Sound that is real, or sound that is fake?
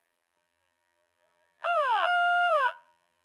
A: fake